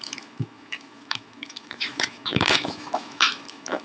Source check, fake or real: fake